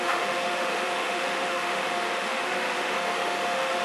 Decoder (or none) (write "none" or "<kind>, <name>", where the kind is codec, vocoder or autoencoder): autoencoder, DAC-VAE